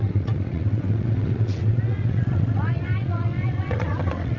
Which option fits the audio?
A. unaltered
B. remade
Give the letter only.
B